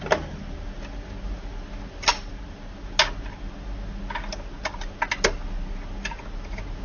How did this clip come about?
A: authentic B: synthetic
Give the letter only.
A